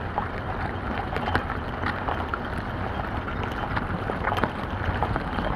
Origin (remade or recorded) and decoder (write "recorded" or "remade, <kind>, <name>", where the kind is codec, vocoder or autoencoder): recorded